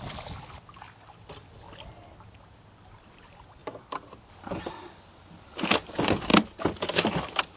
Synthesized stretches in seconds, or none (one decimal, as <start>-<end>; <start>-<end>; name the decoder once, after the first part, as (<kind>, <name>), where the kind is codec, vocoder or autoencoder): none